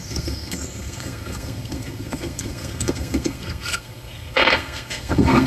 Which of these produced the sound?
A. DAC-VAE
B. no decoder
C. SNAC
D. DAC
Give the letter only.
C